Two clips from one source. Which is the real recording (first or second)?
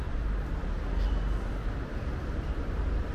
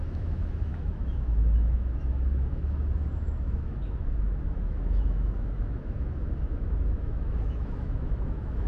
first